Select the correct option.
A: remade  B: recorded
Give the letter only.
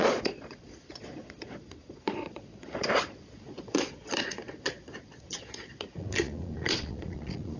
A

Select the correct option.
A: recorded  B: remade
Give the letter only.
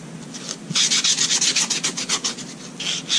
A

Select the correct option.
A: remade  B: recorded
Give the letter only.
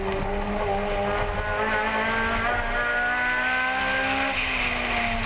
B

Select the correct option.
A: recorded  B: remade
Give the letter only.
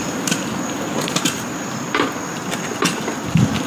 A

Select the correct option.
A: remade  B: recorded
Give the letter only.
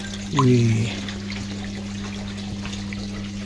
B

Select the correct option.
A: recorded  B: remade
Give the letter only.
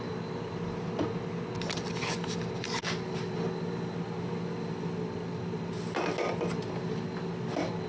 A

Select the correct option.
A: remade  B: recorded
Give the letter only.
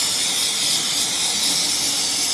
B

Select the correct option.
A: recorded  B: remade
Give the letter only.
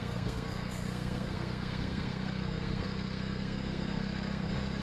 B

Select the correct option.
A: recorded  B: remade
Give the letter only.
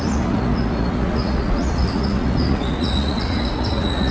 B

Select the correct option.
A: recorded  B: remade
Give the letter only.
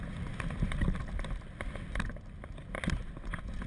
A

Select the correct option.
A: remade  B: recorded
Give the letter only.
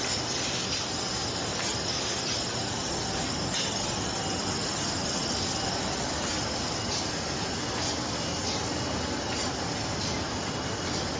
B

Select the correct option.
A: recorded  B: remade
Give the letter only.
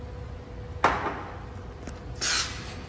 A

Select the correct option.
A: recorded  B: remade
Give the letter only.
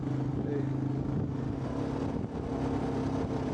A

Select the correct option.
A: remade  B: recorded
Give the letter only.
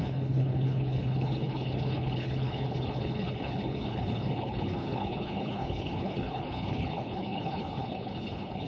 A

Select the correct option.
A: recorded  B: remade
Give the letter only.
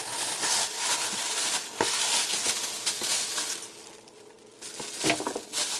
A